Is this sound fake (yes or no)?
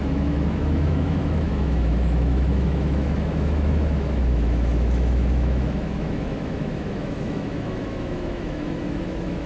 yes